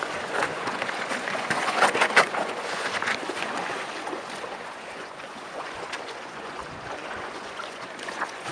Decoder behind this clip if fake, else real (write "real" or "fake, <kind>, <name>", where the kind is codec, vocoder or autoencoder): fake, vocoder, Vocos